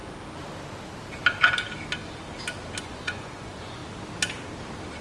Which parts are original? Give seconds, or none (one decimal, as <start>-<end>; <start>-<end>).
0.0-2.8; 3.8-5.0